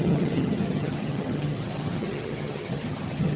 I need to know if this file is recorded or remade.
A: remade